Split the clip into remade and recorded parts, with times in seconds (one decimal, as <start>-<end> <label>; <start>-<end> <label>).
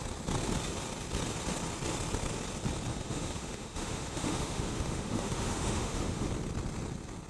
0.0-2.9 recorded; 2.9-6.3 remade; 6.3-7.3 recorded